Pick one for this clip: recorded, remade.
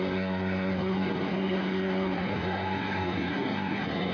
remade